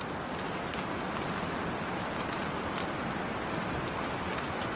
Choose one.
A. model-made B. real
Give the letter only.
B